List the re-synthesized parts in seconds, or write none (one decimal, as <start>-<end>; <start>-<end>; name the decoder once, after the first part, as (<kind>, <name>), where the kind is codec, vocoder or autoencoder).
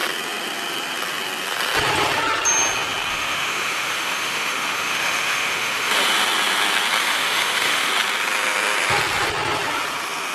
3.1-5.9 (autoencoder, DAC-VAE); 7.0-7.9